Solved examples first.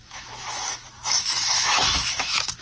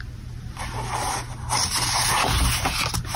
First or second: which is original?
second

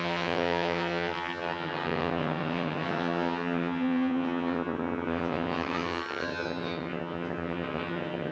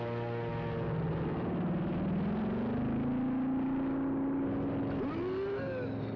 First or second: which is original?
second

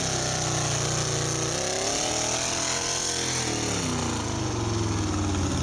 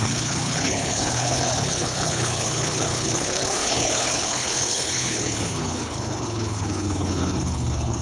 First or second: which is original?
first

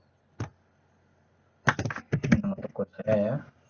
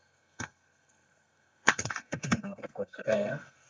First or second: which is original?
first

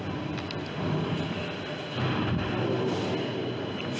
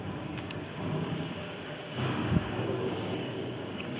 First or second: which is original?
first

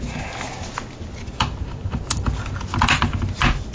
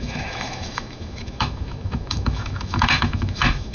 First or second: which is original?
first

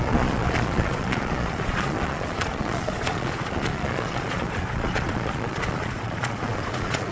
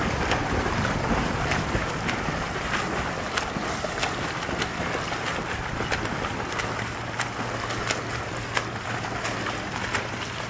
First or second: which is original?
second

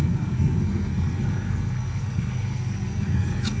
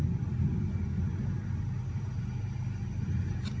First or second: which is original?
second